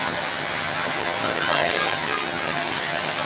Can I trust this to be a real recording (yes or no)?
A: no